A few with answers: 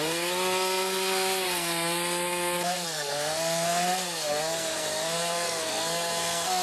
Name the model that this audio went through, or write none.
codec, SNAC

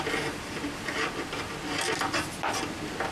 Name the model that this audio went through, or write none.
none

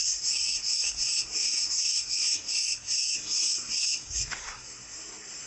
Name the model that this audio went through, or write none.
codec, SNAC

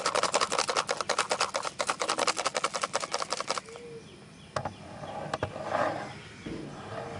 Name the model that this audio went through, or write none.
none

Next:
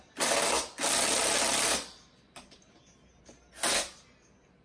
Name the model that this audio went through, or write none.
none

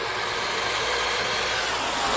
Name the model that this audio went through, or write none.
none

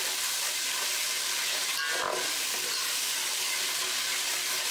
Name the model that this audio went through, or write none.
none